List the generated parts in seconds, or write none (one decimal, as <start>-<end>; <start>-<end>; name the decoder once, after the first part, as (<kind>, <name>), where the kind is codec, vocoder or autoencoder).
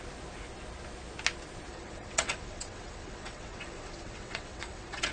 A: 1.7-5.1 (vocoder, WaveNeXt)